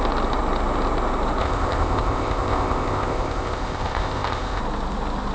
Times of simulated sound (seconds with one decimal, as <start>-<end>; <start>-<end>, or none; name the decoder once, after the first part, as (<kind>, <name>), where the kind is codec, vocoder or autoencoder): 1.4-4.6 (codec, ZipCodec)